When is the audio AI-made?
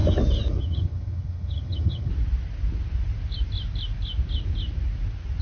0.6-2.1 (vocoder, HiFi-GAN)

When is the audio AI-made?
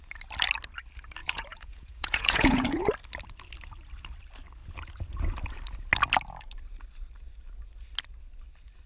1.2-2.9 (vocoder, Vocos)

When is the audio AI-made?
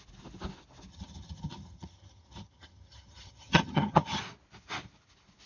0.9-4.2 (vocoder, HiFi-GAN)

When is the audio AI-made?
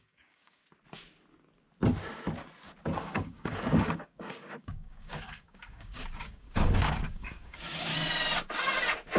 0.0-0.6 (codec, DAC); 3.0-7.9